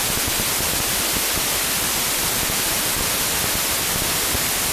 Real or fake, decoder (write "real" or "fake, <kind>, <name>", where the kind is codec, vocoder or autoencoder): real